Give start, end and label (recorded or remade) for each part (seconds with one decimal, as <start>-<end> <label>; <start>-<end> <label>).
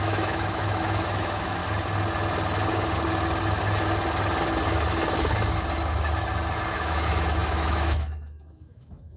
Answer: 0.0-1.6 remade; 1.6-6.7 recorded; 6.7-9.2 remade